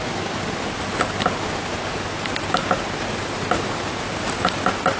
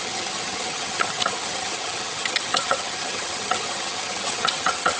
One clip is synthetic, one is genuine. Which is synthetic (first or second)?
second